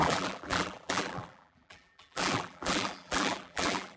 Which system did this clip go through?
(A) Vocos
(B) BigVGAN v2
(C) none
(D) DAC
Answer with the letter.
B